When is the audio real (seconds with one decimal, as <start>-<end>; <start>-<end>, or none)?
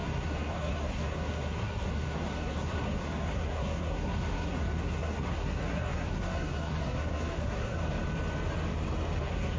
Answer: 7.8-9.2